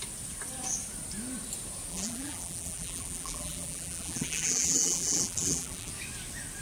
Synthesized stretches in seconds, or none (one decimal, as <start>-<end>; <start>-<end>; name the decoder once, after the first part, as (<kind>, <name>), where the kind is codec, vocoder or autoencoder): 1.9-5.9 (vocoder, BigVGAN v2)